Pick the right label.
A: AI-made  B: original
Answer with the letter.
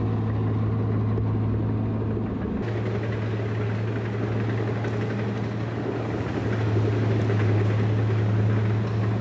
B